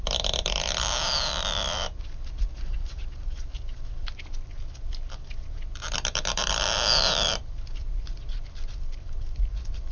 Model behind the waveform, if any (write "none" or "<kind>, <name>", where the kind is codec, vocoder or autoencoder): vocoder, BigVGAN v2